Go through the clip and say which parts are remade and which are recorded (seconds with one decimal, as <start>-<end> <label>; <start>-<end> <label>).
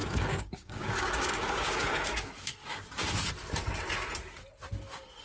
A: 0.0-3.1 remade; 3.1-5.2 recorded